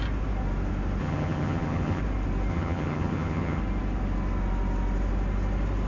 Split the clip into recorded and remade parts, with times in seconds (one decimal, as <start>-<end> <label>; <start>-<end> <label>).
0.0-1.0 recorded; 1.0-2.0 remade; 2.0-2.5 recorded; 2.5-3.6 remade; 3.6-5.9 recorded